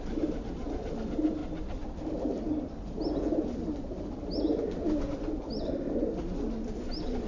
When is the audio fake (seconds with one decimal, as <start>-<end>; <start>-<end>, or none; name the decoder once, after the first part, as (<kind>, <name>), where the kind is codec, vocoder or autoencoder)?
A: none